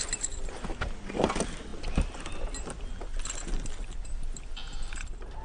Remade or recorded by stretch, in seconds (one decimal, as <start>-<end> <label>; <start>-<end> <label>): 0.0-5.4 recorded